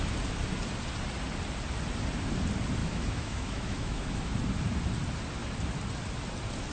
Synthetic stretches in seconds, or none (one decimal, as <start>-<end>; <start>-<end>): 2.8-4.3